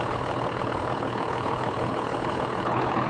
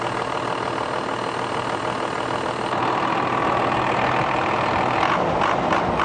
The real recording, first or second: second